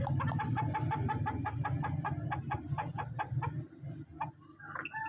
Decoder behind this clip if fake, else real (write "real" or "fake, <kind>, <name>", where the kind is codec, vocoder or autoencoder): real